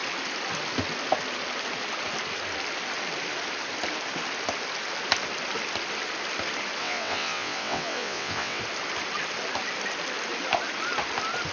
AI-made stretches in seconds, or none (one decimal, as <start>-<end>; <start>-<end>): 6.8-8.6